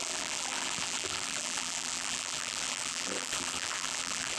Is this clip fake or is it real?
fake